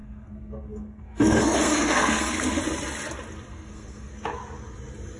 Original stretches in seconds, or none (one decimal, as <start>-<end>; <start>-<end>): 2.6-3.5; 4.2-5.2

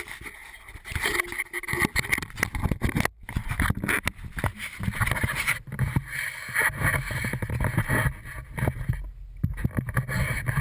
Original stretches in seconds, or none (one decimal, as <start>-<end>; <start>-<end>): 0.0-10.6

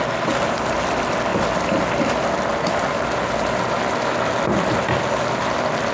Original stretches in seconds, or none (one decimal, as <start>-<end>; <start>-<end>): 0.0-5.9